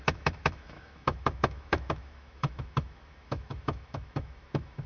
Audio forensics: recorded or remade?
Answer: remade